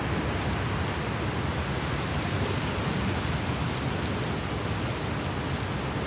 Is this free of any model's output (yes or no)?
yes